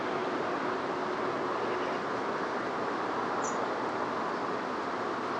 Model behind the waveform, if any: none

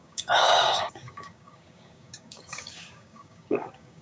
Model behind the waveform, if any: codec, DAC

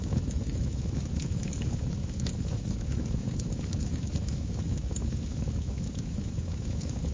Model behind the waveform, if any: autoencoder, DAC-VAE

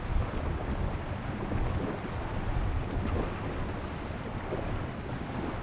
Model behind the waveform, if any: none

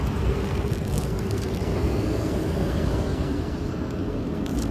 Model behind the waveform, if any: codec, SNAC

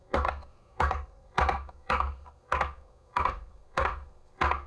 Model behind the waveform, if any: codec, SNAC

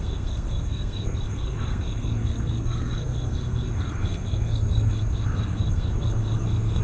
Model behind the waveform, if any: codec, SNAC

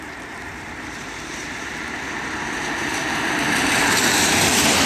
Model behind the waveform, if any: vocoder, BigVGAN v2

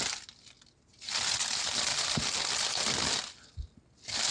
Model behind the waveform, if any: none